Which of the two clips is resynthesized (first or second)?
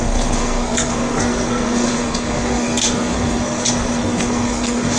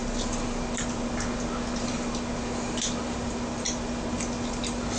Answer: first